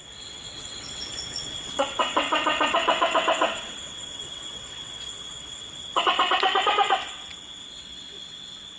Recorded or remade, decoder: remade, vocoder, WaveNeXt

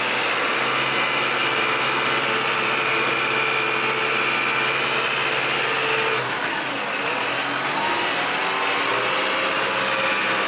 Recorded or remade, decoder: recorded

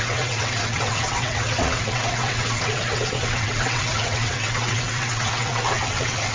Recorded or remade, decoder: remade, vocoder, WaveNeXt